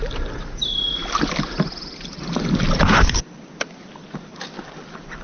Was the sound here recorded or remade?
recorded